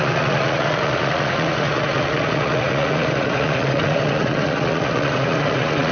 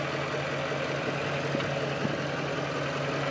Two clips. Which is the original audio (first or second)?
second